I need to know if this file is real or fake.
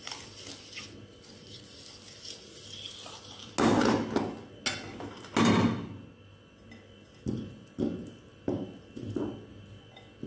real